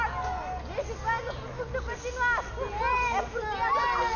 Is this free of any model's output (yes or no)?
yes